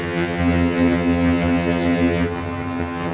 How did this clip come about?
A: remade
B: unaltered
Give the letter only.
A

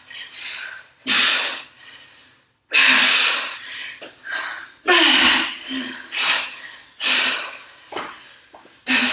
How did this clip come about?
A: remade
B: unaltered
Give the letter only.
B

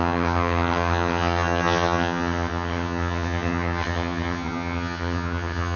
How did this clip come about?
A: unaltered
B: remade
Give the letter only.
B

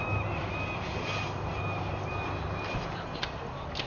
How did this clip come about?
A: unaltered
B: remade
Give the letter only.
A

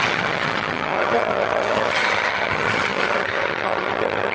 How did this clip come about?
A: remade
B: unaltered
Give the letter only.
A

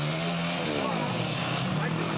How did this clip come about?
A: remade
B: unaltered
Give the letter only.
B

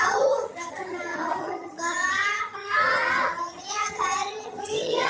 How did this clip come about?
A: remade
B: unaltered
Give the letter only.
A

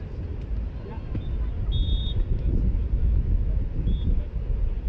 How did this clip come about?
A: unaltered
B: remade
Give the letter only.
A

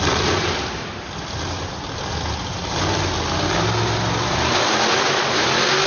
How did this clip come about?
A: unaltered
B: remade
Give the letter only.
A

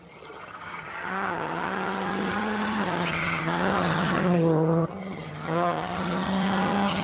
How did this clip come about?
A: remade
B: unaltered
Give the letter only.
A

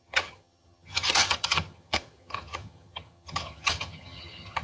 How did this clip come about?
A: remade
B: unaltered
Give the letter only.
A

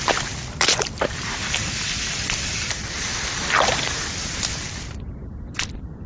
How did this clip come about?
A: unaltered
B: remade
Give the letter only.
A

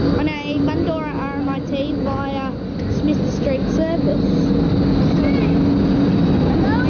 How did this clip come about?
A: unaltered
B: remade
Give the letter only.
A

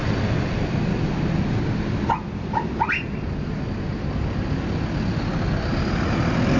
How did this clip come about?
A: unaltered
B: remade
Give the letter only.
A